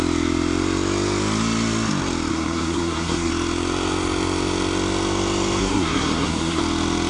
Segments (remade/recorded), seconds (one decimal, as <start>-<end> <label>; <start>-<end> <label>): 0.0-2.3 recorded; 2.3-3.3 remade; 3.3-5.6 recorded; 5.6-6.6 remade; 6.6-7.1 recorded

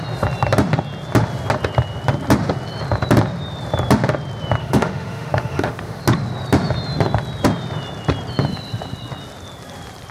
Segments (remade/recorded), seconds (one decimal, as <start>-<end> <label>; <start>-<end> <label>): 0.0-4.6 recorded; 4.6-6.0 remade; 6.0-10.1 recorded

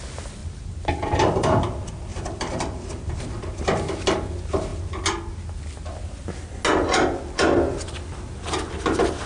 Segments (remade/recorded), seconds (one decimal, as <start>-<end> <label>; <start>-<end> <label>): 0.0-0.4 recorded; 0.4-1.6 remade; 1.6-2.1 recorded; 2.1-3.3 remade; 3.3-9.3 recorded